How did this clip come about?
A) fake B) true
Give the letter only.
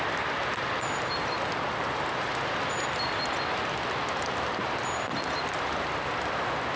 B